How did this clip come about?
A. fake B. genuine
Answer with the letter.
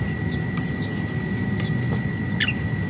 B